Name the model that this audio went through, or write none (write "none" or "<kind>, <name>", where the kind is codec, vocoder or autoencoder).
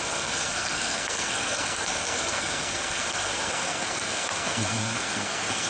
codec, SNAC